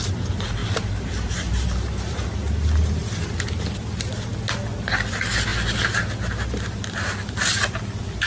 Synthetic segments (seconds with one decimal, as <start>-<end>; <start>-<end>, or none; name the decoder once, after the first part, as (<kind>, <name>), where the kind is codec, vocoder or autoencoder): 0.6-2.3 (vocoder, BigVGAN v2)